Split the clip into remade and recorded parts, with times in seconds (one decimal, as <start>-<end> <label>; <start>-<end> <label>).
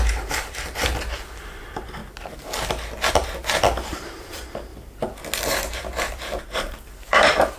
0.0-2.0 remade; 2.0-3.1 recorded; 3.1-4.7 remade; 4.7-5.4 recorded; 5.4-7.6 remade